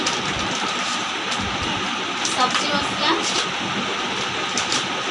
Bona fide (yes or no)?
yes